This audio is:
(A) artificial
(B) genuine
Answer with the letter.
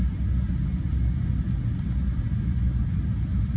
B